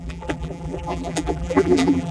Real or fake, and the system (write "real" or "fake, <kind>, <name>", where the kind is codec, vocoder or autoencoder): fake, vocoder, BigVGAN v2